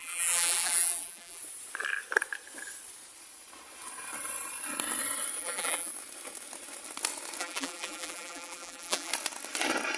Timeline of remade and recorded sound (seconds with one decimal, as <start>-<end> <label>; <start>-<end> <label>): 0.0-1.4 remade; 1.4-5.4 recorded; 5.4-5.9 remade; 5.9-7.4 recorded; 7.4-9.1 remade; 9.1-10.0 recorded